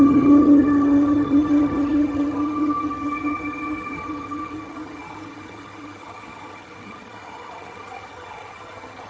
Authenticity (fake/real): fake